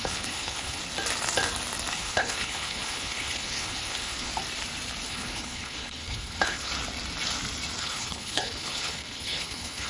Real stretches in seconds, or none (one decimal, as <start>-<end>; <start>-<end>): 0.8-1.9; 4.3-5.1; 6.7-7.8